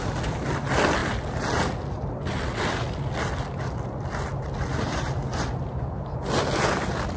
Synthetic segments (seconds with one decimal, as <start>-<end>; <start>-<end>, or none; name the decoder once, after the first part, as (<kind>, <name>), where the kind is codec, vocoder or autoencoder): none